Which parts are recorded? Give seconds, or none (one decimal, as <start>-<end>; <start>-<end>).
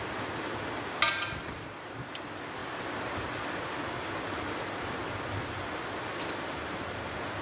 0.0-7.4